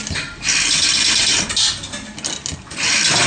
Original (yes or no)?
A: yes